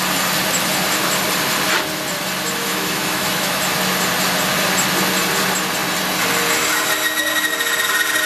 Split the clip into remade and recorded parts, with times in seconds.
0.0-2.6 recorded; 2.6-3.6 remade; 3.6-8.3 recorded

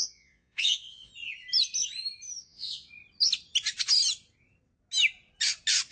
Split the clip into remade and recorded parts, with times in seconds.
0.0-1.1 remade; 1.1-2.4 recorded; 2.4-2.9 remade; 2.9-5.9 recorded

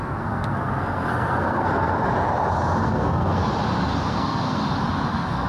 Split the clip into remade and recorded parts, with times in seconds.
0.0-1.9 remade; 1.9-2.8 recorded; 2.8-3.5 remade; 3.5-4.0 recorded; 4.0-4.6 remade; 4.6-5.1 recorded; 5.1-5.5 remade

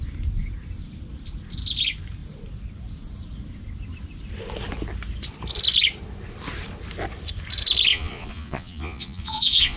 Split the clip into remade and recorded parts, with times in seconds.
0.0-7.9 recorded; 7.9-9.8 remade

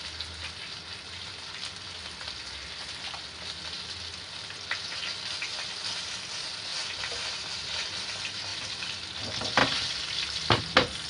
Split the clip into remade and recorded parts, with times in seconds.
0.0-5.5 recorded; 5.5-6.0 remade; 6.0-8.5 recorded; 8.5-9.2 remade; 9.2-9.6 recorded; 9.6-10.6 remade; 10.6-11.1 recorded